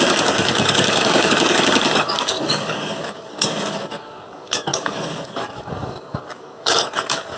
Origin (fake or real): fake